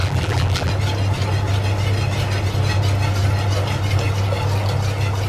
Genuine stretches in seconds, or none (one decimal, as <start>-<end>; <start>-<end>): 0.7-5.3